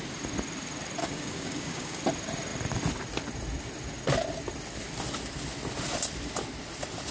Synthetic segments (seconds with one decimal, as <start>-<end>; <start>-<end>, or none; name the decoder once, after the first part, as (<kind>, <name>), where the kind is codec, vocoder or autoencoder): 1.0-2.0 (codec, DAC)